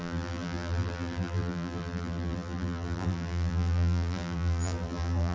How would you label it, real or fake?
fake